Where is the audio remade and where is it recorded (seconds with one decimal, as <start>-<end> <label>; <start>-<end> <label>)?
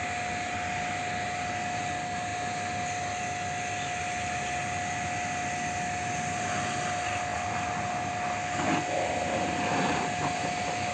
0.0-10.9 recorded